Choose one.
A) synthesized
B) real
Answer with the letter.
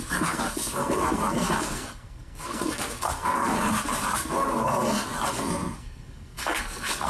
A